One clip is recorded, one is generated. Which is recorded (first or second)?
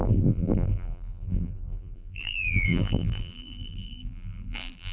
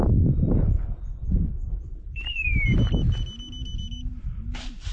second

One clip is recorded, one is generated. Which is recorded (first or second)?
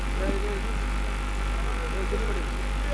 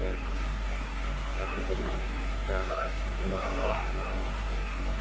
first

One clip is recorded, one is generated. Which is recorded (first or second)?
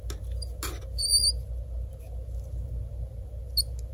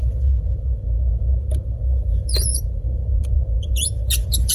first